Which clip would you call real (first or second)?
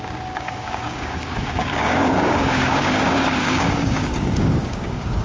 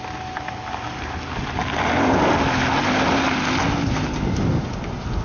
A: second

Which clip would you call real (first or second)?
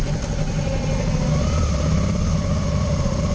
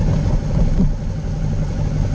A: second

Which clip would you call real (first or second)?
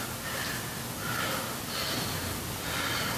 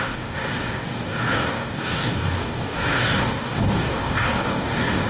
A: first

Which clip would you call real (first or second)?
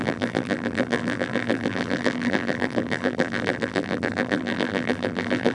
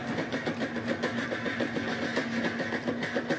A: second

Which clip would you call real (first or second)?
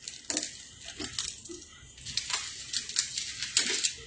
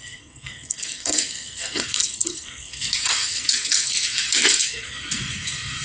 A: first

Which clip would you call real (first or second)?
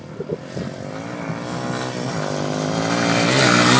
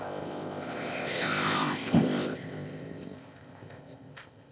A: first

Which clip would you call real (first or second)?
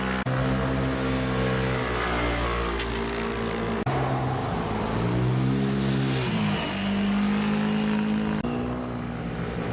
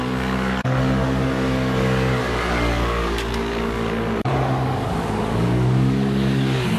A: first